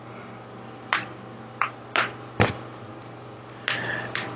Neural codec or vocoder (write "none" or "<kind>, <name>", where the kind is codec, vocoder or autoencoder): none